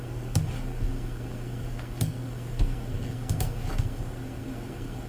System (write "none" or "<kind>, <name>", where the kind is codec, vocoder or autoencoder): codec, SNAC